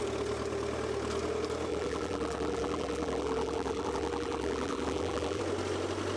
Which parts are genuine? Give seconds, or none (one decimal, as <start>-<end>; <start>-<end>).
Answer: 0.0-1.7; 5.4-6.2